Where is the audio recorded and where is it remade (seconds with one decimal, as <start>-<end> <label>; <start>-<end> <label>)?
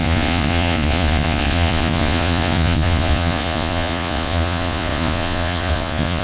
0.0-6.2 remade